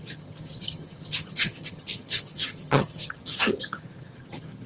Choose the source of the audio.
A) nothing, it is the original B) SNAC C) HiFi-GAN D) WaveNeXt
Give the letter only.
C